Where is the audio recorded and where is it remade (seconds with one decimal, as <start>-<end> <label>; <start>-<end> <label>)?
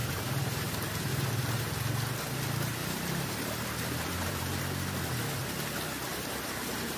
0.0-0.7 remade; 0.7-1.1 recorded; 1.1-1.6 remade; 1.6-2.8 recorded; 2.8-4.6 remade; 4.6-6.1 recorded; 6.1-7.0 remade